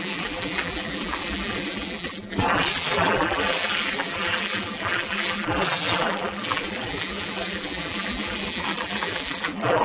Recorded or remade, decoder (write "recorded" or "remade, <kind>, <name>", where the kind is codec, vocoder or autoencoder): remade, vocoder, BigVGAN v2